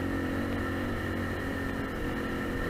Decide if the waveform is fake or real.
real